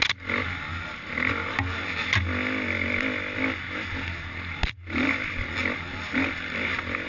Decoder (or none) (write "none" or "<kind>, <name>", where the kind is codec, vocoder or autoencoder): none